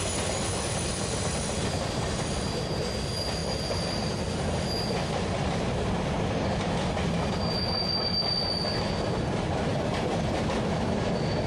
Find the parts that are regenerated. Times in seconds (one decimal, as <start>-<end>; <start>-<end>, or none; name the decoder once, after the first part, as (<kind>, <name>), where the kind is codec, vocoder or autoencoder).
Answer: 3.4-4.2 (vocoder, BigVGAN v2); 9.7-10.4

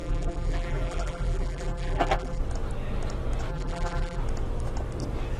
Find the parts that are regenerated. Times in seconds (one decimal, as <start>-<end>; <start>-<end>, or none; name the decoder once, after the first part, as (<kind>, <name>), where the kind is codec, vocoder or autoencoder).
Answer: 0.0-2.4 (vocoder, BigVGAN v2); 3.5-4.2

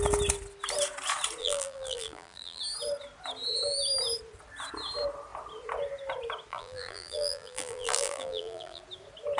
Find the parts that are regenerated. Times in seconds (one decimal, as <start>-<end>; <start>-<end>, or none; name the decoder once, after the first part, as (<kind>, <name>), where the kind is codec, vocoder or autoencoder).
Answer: 1.4-2.6 (vocoder, BigVGAN v2); 6.5-8.8